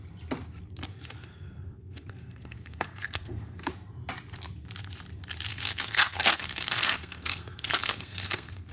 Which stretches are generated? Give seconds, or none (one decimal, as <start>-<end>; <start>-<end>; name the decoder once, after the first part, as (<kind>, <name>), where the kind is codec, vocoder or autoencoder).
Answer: 0.9-3.7 (codec, SNAC); 5.5-8.7